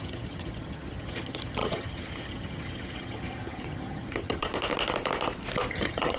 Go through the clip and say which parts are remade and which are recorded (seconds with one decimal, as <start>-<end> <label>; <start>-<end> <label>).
0.0-4.5 remade; 4.5-5.7 recorded; 5.7-6.2 remade